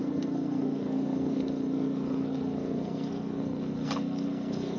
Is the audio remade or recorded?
remade